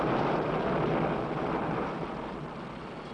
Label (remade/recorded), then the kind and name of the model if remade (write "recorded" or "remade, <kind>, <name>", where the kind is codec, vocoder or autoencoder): recorded